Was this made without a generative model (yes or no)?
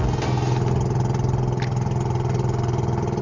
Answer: yes